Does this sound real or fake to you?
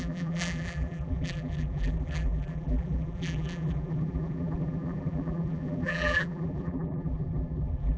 fake